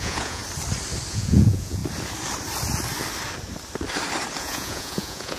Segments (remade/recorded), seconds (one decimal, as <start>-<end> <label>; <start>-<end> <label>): 0.0-0.4 remade; 0.4-1.1 recorded; 1.1-1.8 remade; 1.8-4.4 recorded; 4.4-5.4 remade

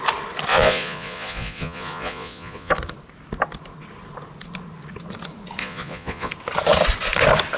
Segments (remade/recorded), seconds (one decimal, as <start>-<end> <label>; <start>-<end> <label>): 0.0-0.5 recorded; 0.5-2.7 remade; 2.7-5.6 recorded; 5.6-6.3 remade; 6.3-7.6 recorded

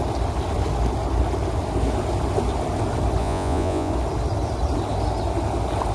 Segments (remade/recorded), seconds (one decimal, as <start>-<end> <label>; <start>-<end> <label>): 0.0-3.2 recorded; 3.2-3.9 remade; 3.9-5.9 recorded

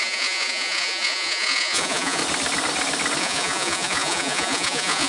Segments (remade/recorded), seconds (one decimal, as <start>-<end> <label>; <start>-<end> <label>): 0.0-2.2 remade; 2.2-3.2 recorded; 3.2-5.1 remade

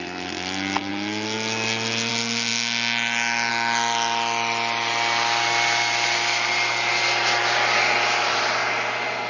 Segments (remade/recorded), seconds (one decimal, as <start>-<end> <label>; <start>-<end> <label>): 0.0-9.3 recorded

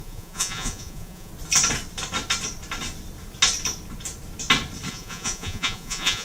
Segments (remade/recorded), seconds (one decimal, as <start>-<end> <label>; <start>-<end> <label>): 0.0-1.3 remade; 1.3-4.9 recorded; 4.9-6.2 remade